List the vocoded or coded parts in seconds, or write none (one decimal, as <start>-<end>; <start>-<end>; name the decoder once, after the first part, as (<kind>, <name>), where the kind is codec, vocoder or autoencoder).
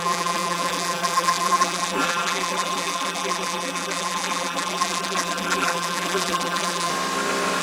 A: 0.0-6.9 (vocoder, BigVGAN v2)